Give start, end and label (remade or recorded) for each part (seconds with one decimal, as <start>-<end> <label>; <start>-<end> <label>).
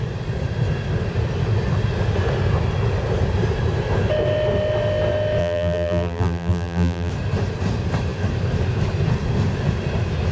0.0-5.4 recorded; 5.4-7.1 remade; 7.1-10.3 recorded